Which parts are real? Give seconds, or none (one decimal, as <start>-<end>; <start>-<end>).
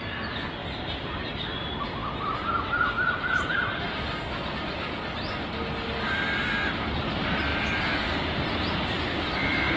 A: 0.0-0.6; 1.3-7.5; 9.3-9.8